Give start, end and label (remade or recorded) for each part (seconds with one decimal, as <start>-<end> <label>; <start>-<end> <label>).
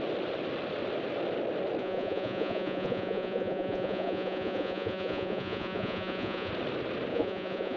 0.0-1.8 recorded; 1.8-6.5 remade; 6.5-7.1 recorded; 7.1-7.8 remade